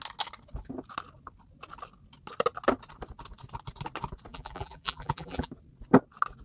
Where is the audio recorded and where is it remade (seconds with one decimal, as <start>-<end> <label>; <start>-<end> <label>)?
0.0-4.3 recorded; 4.3-5.5 remade; 5.5-6.4 recorded